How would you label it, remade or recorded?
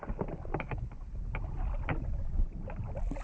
recorded